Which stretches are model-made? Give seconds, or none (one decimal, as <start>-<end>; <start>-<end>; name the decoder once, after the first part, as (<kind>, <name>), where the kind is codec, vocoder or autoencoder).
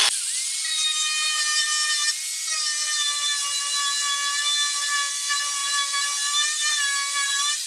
none